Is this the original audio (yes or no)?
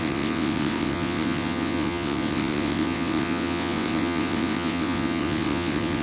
no